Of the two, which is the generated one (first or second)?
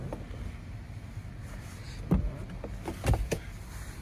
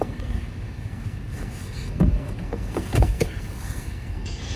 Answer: second